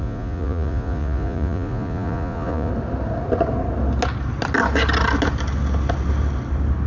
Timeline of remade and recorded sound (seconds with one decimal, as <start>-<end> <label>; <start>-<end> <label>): 0.0-2.7 remade; 2.7-6.9 recorded